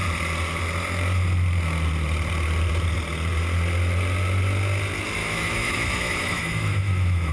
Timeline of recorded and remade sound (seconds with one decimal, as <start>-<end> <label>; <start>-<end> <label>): 0.0-5.2 recorded; 5.2-7.3 remade